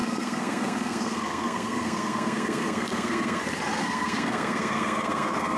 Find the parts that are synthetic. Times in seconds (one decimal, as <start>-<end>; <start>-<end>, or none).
0.0-3.4; 3.8-5.6

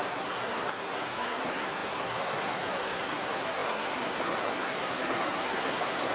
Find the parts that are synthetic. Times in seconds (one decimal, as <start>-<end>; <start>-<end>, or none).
0.0-6.1

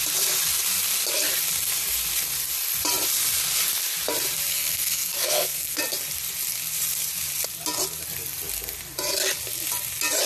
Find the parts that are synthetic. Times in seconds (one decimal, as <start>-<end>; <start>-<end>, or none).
4.5-5.8

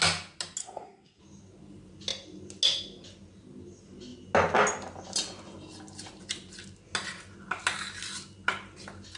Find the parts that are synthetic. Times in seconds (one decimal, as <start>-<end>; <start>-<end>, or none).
0.6-1.2

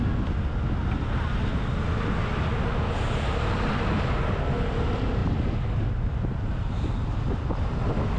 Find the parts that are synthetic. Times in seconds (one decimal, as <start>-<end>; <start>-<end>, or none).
none